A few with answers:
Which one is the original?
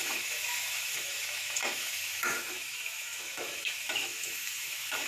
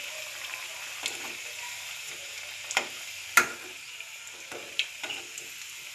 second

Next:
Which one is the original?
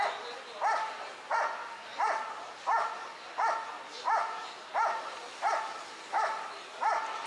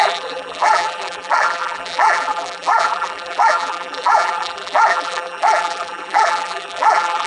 first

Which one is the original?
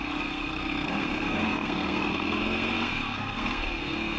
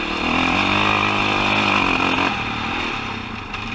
second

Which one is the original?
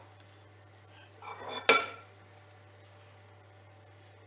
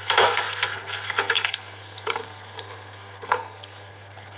first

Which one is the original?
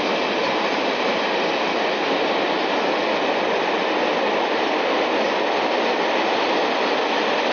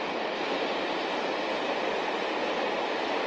first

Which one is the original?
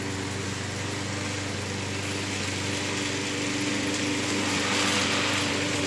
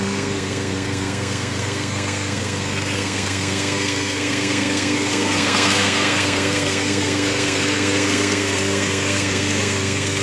first